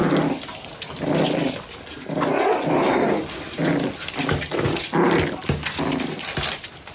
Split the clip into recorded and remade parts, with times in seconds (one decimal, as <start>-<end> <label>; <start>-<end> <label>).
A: 0.0-6.9 recorded